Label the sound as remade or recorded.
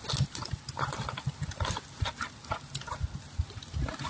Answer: recorded